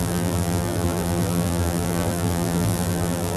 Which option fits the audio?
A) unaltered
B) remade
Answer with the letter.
B